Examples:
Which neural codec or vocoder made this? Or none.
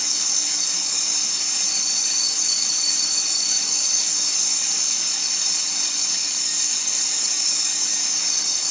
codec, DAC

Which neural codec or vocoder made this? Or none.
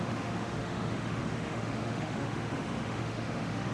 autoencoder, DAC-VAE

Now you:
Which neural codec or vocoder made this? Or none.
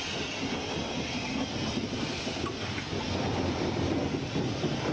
none